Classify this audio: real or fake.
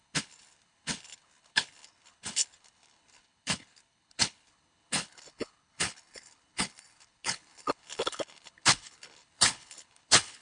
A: fake